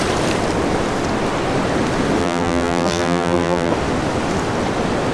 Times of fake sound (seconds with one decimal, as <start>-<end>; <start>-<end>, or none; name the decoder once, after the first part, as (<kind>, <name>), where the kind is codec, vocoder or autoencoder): 2.2-3.7 (vocoder, BigVGAN v2)